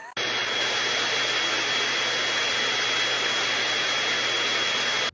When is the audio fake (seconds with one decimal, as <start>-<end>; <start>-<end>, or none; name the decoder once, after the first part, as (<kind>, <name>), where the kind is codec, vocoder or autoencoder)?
none